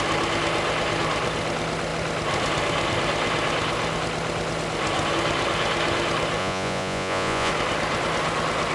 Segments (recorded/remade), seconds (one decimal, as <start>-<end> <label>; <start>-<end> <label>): 0.0-6.4 recorded; 6.4-7.5 remade; 7.5-8.7 recorded